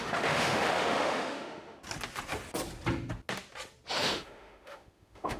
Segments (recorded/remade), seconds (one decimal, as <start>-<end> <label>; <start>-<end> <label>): 0.0-1.8 remade; 1.8-3.9 recorded; 3.9-5.4 remade